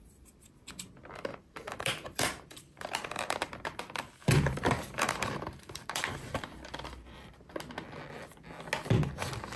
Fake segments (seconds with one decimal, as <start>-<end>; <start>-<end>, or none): 1.3-3.8; 4.2-7.5